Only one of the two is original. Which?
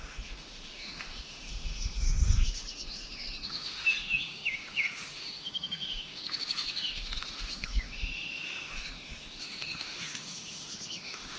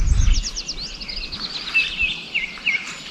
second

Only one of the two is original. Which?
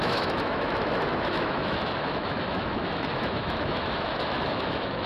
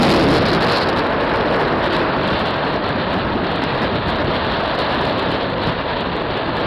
second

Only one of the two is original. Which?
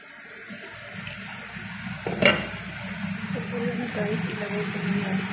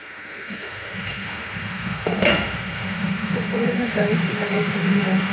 first